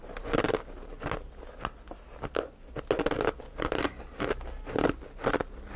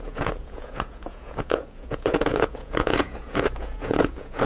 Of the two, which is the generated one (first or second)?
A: second